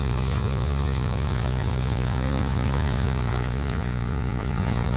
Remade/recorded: remade